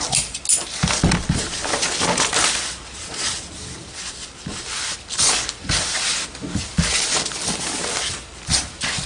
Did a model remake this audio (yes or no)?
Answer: no